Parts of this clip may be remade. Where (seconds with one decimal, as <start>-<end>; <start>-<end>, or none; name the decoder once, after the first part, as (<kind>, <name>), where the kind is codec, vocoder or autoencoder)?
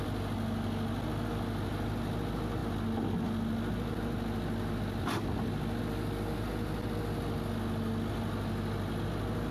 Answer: none